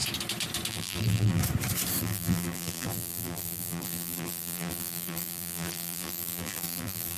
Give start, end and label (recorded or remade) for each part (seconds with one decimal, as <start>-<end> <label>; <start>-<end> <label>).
0.0-0.7 recorded; 0.7-1.4 remade; 1.4-2.0 recorded; 2.0-7.2 remade